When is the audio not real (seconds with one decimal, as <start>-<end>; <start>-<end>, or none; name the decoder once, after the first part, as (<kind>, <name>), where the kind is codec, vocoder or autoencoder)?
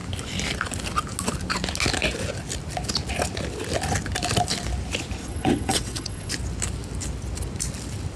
5.2-6.3 (vocoder, WaveNeXt)